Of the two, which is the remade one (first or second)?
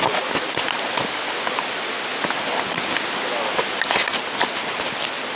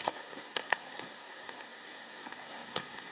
second